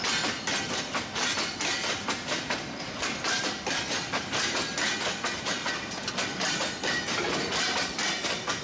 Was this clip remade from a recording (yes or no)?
no